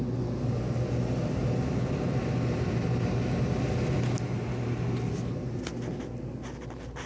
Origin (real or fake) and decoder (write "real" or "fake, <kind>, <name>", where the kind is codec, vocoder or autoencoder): real